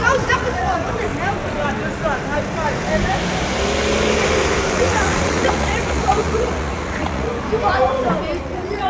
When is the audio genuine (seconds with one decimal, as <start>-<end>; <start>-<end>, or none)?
1.1-4.7; 7.3-8.4